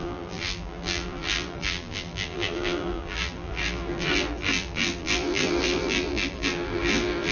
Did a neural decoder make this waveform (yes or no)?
yes